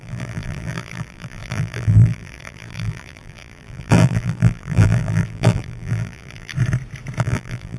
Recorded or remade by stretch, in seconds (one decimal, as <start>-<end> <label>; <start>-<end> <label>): 0.0-6.5 remade; 6.5-7.2 recorded; 7.2-7.8 remade